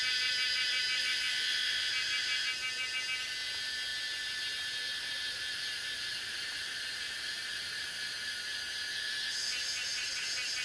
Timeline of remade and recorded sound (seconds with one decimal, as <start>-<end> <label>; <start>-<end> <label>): 0.0-1.0 recorded; 1.0-1.9 remade; 1.9-10.6 recorded